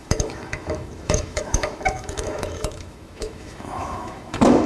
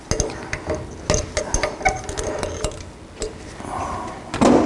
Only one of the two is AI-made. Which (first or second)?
first